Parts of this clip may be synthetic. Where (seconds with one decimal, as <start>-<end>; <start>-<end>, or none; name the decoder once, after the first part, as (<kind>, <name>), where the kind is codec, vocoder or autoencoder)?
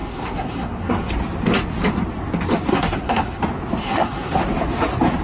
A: 0.0-1.1 (codec, SNAC); 2.7-3.4; 3.8-4.4